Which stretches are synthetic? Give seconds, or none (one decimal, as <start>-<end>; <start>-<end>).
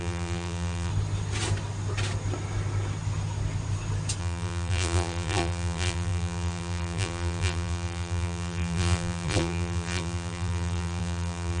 0.0-0.9; 4.2-11.6